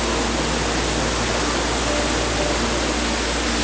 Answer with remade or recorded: recorded